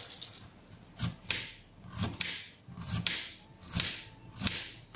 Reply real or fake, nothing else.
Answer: real